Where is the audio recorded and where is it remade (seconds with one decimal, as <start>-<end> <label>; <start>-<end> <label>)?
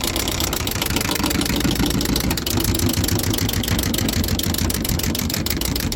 0.0-1.3 remade; 1.3-4.9 recorded; 4.9-6.0 remade